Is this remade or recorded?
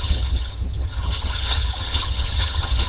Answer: remade